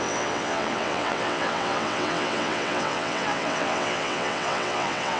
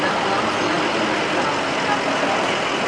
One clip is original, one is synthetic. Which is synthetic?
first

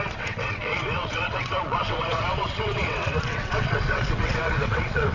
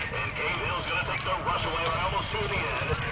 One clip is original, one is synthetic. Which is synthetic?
first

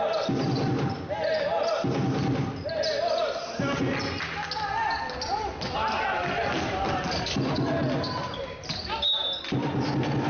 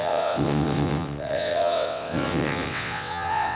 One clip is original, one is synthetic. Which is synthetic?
second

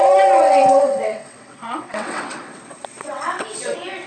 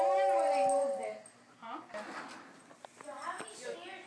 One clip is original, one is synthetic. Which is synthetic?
first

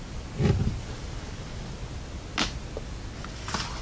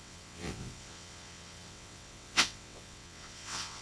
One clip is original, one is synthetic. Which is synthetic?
second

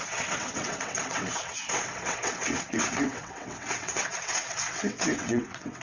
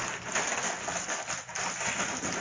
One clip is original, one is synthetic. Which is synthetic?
first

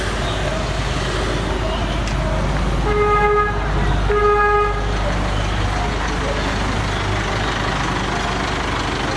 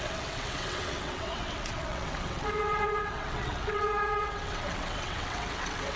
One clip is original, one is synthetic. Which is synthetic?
second